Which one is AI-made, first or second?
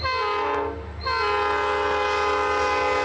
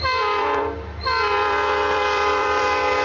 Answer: second